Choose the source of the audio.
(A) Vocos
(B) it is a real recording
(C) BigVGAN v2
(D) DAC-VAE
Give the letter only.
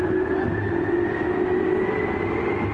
B